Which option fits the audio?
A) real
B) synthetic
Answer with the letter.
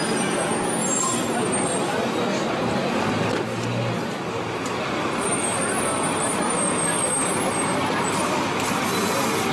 A